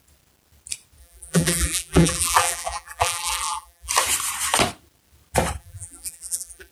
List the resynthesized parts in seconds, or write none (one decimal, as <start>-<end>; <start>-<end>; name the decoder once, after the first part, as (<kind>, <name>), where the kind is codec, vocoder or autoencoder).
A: 1.0-3.9 (vocoder, BigVGAN v2); 5.6-6.7